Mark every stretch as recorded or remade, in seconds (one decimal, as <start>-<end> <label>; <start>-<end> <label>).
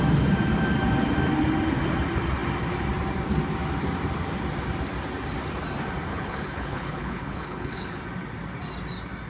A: 0.0-6.1 recorded; 6.1-8.0 remade; 8.0-9.3 recorded